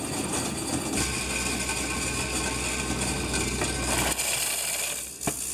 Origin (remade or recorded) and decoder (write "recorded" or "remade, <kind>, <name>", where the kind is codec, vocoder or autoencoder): recorded